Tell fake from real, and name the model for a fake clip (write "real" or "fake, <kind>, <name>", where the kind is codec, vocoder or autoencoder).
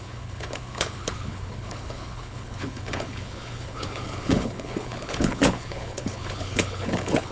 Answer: fake, codec, HILCodec